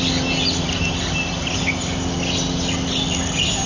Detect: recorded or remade recorded